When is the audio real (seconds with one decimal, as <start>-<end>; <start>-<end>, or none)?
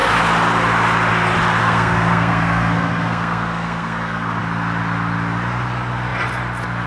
0.0-1.6; 4.4-6.9